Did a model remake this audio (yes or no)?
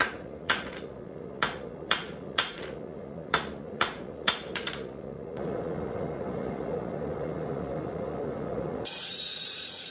yes